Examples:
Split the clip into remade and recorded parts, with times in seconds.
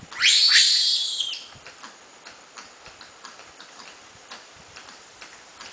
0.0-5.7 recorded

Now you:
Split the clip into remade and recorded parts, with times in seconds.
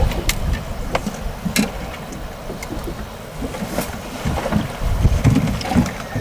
0.0-6.2 recorded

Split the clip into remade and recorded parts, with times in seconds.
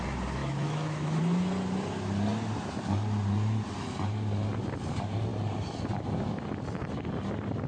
0.0-0.4 recorded; 0.4-1.2 remade; 1.2-7.7 recorded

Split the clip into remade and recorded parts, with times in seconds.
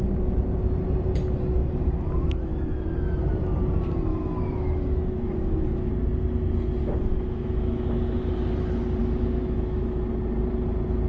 0.0-1.6 recorded; 1.6-3.2 remade; 3.2-4.1 recorded; 4.1-5.9 remade; 5.9-6.8 recorded; 6.8-8.2 remade; 8.2-9.0 recorded; 9.0-10.0 remade; 10.0-11.1 recorded